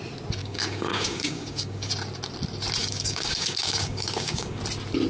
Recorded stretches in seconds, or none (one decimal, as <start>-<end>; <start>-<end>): 0.0-0.4; 1.9-2.8; 4.6-5.1